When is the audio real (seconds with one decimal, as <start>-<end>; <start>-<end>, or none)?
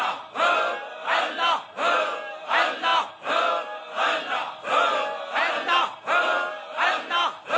0.0-7.6